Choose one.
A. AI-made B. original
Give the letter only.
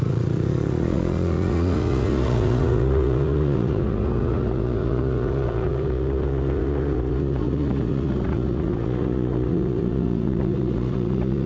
A